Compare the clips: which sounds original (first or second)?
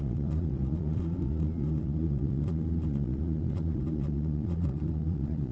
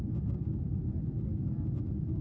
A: second